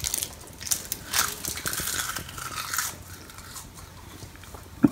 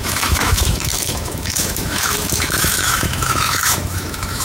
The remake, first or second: second